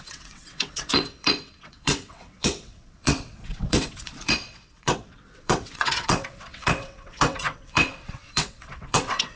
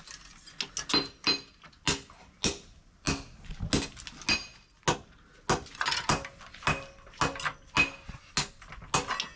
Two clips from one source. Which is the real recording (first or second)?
second